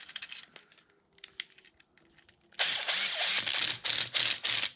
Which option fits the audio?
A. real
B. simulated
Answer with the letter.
A